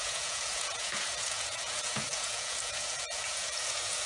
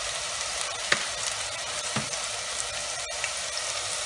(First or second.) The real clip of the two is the second